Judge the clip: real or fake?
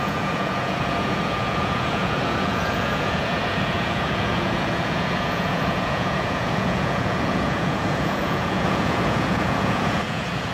fake